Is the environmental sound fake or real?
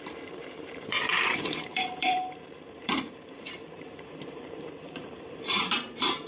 fake